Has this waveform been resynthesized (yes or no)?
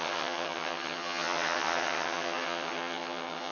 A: yes